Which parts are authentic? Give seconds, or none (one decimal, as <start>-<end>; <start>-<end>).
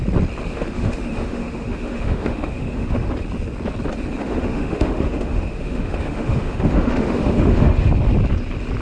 0.0-0.5; 3.1-4.2; 7.9-8.8